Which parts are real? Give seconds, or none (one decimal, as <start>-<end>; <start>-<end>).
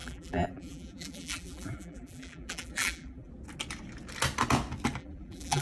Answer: 3.3-5.0